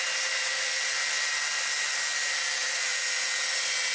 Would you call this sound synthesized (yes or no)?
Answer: no